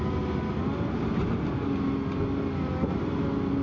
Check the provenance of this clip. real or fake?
real